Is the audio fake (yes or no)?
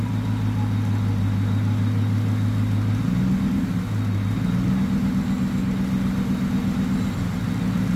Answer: no